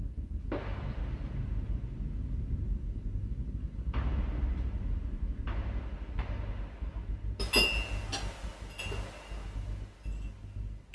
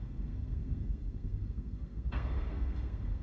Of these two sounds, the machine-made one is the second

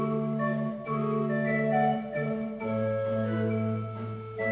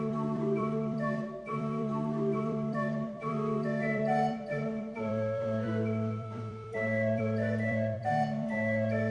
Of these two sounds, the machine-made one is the second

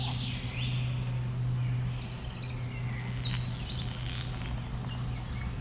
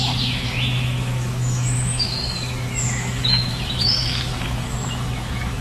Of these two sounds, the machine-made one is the second